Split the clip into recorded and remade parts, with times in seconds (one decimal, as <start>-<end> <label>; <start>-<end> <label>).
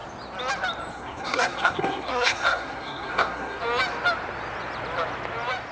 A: 0.0-0.9 recorded; 0.9-3.6 remade; 3.6-5.7 recorded